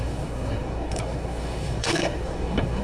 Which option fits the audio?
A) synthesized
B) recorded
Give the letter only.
A